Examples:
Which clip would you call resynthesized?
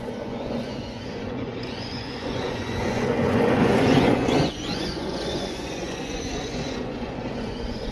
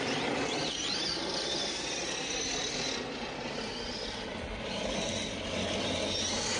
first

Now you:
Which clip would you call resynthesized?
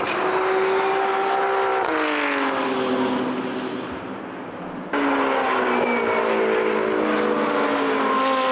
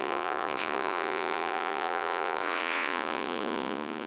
second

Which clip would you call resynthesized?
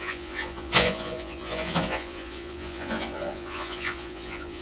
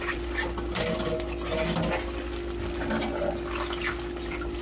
first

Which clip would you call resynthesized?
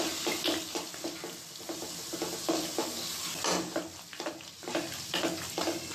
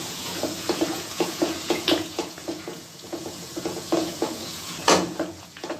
second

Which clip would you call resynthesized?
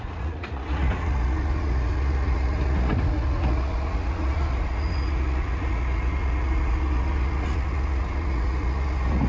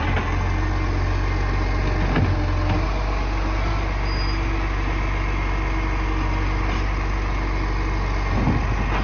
first